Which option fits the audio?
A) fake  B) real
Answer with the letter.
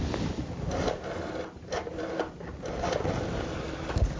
B